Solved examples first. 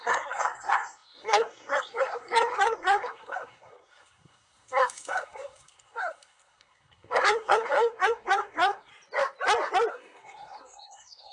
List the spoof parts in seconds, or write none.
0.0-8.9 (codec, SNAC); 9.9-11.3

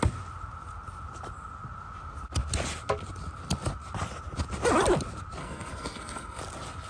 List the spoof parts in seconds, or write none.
5.4-6.4 (codec, SNAC)

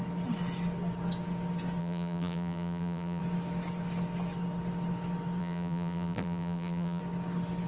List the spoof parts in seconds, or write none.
1.8-3.2 (vocoder, BigVGAN v2); 5.4-7.0

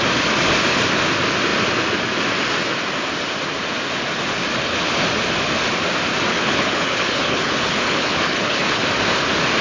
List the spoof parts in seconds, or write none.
6.3-8.8 (codec, HILCodec)

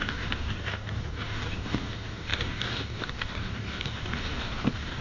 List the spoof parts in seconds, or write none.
0.0-5.0 (codec, DAC)

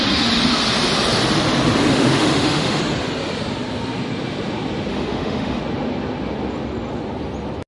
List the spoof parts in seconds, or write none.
1.9-2.8 (autoencoder, DAC-VAE); 4.9-5.6

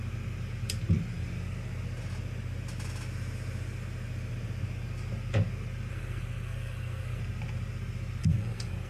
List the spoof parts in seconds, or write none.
5.9-7.2 (codec, SNAC); 8.2-8.9